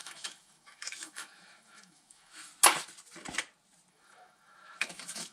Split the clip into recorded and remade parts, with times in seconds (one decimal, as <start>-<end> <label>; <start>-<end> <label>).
0.0-2.5 remade; 2.5-3.9 recorded; 3.9-5.3 remade